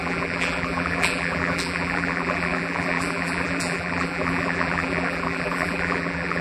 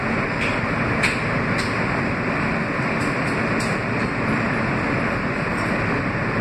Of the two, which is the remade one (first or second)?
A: first